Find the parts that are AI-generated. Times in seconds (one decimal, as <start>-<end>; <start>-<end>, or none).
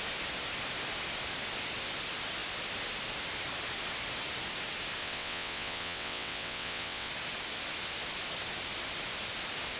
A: 5.0-7.1